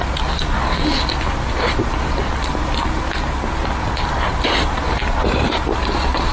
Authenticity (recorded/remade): recorded